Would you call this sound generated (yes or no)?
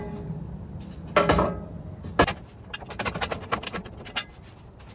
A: no